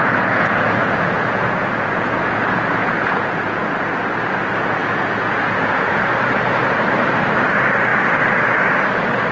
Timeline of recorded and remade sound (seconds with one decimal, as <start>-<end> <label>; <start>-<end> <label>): 0.0-3.7 remade; 3.7-4.8 recorded; 4.8-5.9 remade; 5.9-9.3 recorded